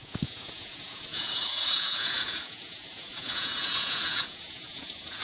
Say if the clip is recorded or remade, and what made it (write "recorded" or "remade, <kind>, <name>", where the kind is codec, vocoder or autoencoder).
remade, vocoder, Vocos